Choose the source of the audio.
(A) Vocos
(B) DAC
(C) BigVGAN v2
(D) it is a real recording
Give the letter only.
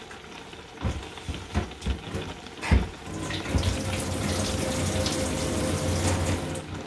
D